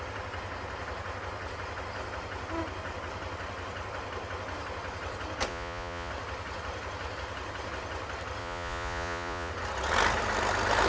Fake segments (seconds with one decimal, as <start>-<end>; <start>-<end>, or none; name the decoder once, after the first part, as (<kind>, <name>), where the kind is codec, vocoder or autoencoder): 5.5-6.1 (vocoder, Vocos); 8.4-9.5